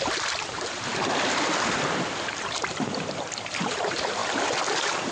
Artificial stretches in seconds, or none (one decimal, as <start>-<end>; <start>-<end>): 0.0-0.9; 2.4-4.2